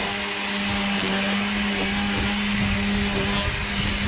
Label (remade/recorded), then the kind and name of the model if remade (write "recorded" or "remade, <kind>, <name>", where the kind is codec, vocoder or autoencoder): recorded